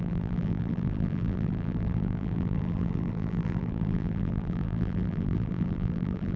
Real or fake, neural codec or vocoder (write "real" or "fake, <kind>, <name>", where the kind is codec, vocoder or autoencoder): fake, vocoder, BigVGAN v2